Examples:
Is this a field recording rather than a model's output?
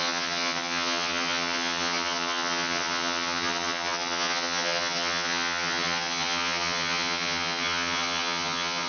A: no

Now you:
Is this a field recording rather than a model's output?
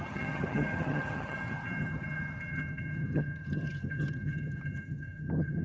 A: no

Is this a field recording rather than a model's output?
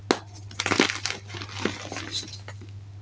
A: yes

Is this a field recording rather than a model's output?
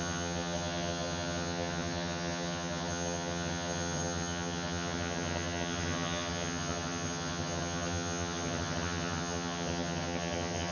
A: no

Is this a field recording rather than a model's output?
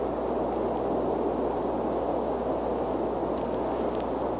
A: yes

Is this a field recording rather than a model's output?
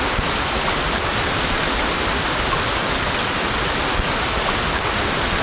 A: yes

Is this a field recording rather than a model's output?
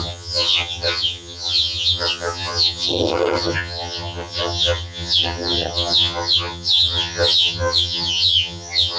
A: no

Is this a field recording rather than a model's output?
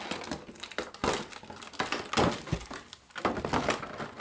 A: yes